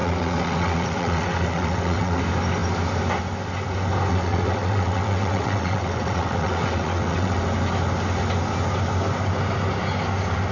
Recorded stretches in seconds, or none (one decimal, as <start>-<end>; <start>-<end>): 2.2-4.1; 7.4-10.5